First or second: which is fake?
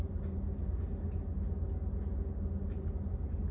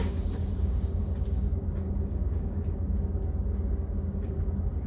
second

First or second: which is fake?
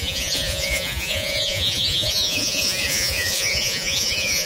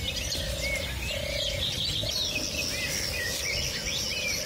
first